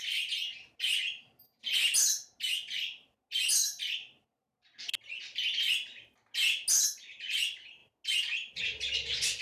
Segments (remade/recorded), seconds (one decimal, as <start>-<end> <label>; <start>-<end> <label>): 0.0-9.4 recorded